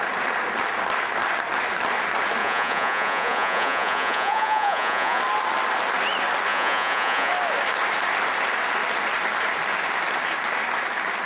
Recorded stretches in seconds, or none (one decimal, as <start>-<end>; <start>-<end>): 0.0-2.4; 5.2-6.5; 7.3-11.3